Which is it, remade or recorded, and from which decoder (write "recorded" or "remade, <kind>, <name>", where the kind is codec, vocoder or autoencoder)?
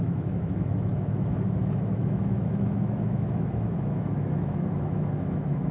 remade, autoencoder, DAC-VAE